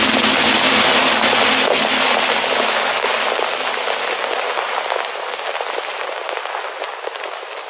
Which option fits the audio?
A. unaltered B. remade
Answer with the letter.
A